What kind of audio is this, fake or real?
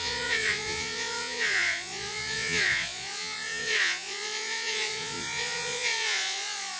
fake